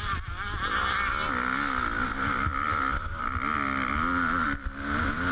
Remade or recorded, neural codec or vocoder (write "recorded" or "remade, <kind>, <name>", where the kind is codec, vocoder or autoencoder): recorded